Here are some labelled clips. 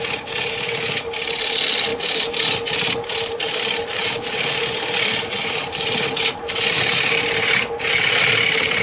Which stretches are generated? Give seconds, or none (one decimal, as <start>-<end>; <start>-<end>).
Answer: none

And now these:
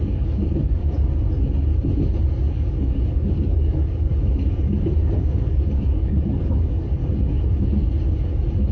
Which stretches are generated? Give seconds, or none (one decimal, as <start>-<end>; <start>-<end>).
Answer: 0.0-0.8; 2.5-4.1; 5.2-7.0

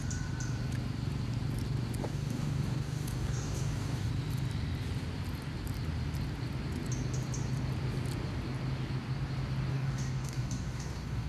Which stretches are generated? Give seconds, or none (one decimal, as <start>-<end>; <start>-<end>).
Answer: 2.0-4.1; 9.7-11.3

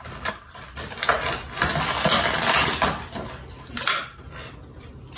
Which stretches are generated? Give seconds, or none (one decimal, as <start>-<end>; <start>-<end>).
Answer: none

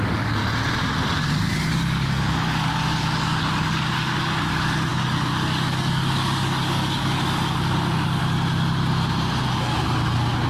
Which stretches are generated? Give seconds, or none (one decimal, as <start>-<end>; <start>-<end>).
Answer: 0.0-0.4; 1.5-8.2; 9.5-10.5